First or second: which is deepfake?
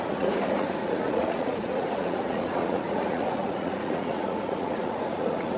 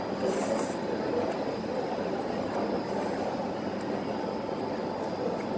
first